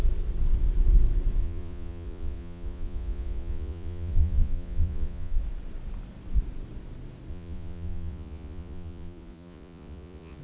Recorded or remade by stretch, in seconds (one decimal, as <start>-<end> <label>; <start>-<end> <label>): 0.0-1.4 recorded; 1.4-5.4 remade; 5.4-7.3 recorded; 7.3-10.4 remade